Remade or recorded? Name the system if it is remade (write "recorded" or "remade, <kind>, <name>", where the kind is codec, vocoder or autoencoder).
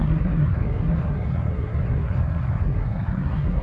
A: remade, codec, SNAC